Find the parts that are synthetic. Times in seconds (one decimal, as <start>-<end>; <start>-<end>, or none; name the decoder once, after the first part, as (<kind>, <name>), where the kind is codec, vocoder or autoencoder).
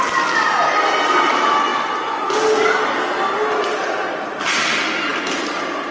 none